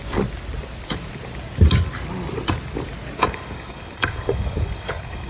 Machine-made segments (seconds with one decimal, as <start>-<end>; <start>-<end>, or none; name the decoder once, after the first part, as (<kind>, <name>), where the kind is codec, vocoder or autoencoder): 3.2-5.3 (codec, DAC)